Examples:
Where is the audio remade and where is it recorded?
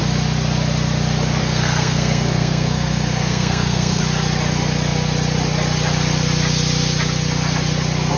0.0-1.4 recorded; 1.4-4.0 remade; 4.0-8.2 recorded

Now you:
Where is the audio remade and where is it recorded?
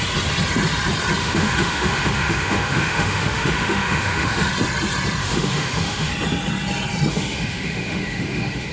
0.0-1.2 recorded; 1.2-4.5 remade; 4.5-5.2 recorded; 5.2-6.1 remade; 6.1-7.1 recorded; 7.1-8.7 remade